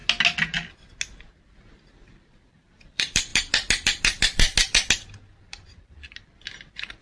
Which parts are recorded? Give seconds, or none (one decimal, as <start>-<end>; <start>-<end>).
0.0-1.4; 3.3-5.5